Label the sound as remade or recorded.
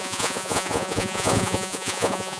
remade